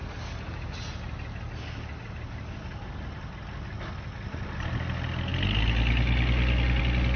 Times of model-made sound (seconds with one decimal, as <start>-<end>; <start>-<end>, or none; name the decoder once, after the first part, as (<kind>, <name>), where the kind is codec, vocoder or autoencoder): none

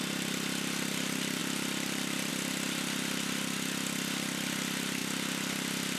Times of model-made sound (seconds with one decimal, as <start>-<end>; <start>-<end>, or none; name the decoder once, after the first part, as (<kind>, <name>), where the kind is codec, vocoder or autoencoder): 1.4-2.3 (vocoder, BigVGAN v2)

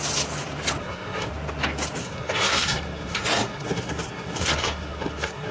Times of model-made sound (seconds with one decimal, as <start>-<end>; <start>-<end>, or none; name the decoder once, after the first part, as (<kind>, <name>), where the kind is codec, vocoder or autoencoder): 0.8-1.3 (codec, SNAC); 2.0-5.5